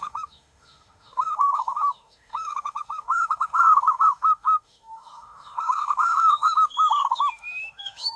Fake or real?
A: fake